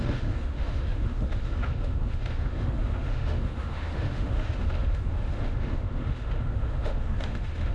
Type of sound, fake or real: fake